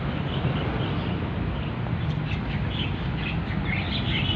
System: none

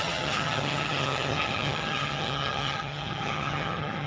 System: vocoder, HiFi-GAN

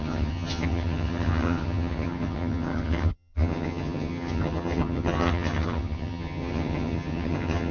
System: vocoder, HiFi-GAN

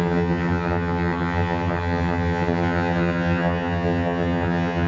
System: vocoder, HiFi-GAN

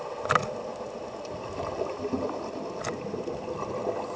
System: none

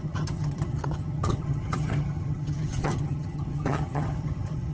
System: vocoder, HiFi-GAN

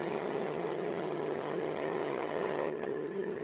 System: vocoder, HiFi-GAN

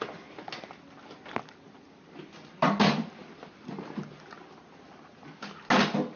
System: none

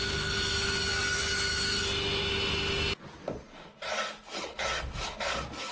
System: none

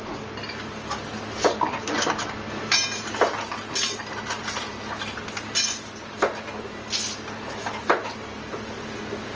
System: none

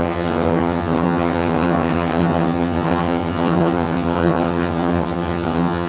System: vocoder, HiFi-GAN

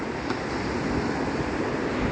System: none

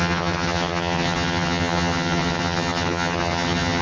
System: vocoder, HiFi-GAN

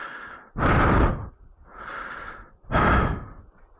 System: none